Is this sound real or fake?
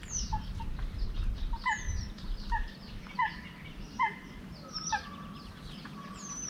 fake